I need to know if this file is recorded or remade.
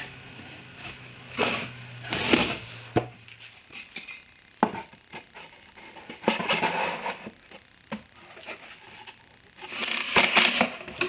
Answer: recorded